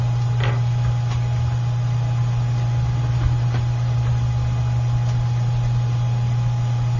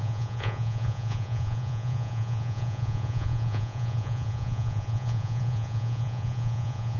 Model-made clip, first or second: second